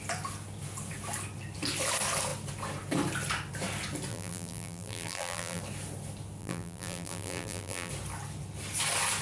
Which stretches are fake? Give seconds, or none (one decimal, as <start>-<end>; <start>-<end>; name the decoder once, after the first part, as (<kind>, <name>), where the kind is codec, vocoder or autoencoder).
4.1-5.6 (vocoder, BigVGAN v2); 6.4-7.9